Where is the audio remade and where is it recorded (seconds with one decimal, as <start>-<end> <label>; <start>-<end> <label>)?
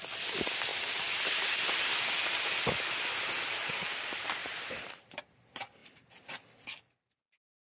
0.0-4.4 recorded; 4.4-5.2 remade; 5.2-5.8 recorded; 5.8-6.4 remade; 6.4-7.6 recorded